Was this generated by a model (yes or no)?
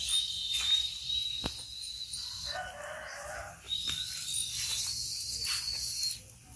no